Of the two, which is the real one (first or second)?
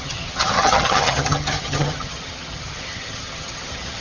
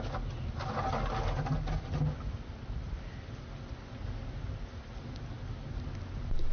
second